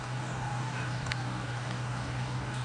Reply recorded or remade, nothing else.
remade